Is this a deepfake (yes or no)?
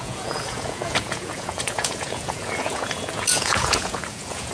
yes